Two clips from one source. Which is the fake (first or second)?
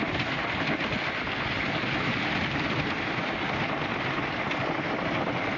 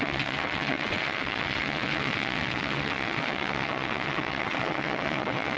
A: second